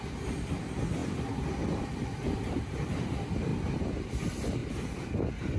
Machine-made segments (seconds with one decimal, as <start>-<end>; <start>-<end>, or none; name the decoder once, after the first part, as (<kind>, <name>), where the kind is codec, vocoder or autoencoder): 0.0-3.5 (vocoder, BigVGAN v2); 4.1-4.6